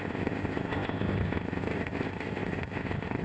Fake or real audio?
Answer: fake